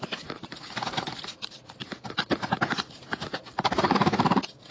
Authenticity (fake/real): fake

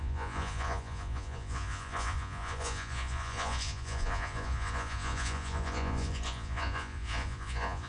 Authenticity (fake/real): fake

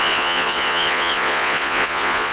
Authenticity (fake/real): fake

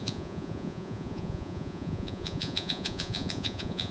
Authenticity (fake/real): fake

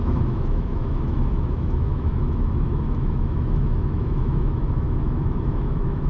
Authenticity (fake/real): fake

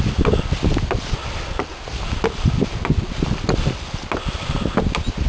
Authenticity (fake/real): real